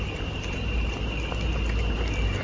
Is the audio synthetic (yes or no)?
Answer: no